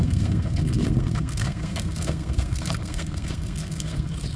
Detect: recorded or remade remade